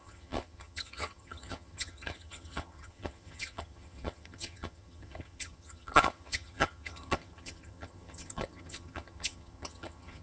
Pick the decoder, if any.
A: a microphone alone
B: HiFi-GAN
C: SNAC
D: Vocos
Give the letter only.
B